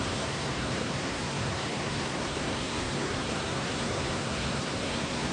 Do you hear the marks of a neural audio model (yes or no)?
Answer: yes